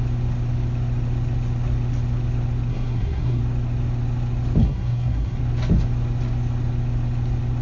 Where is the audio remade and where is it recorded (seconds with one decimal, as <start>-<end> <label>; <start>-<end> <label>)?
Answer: 0.0-2.7 recorded; 2.7-3.4 remade; 3.4-4.6 recorded; 4.6-5.4 remade; 5.4-7.6 recorded